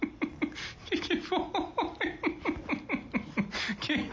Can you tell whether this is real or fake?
real